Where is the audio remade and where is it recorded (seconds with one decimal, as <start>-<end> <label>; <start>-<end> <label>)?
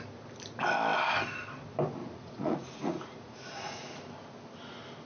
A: 0.0-2.0 recorded; 2.0-4.0 remade; 4.0-5.1 recorded